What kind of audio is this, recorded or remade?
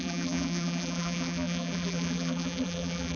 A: remade